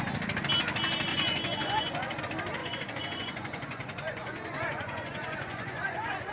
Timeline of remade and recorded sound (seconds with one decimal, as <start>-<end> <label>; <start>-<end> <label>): 0.0-1.1 recorded; 1.1-2.2 remade; 2.2-2.6 recorded; 2.6-6.3 remade